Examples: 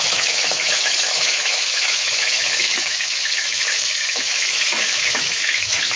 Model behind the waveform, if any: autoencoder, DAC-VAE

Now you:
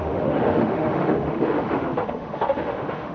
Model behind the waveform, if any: autoencoder, DAC-VAE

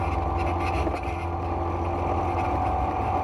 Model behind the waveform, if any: none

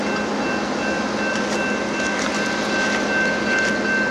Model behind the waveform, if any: none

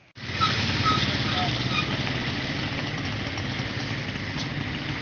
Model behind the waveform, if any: none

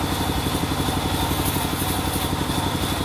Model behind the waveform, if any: none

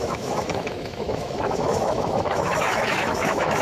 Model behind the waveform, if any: autoencoder, DAC-VAE